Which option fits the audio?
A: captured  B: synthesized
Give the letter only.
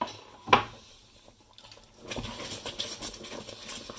A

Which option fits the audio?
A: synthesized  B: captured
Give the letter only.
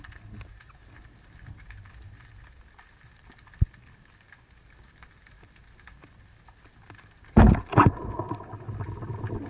B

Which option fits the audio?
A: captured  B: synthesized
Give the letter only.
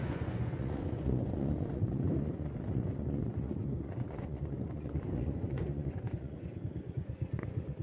B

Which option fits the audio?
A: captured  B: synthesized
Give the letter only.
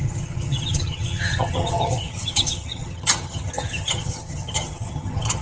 B